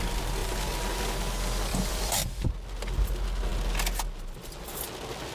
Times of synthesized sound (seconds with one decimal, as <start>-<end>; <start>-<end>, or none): 1.7-2.5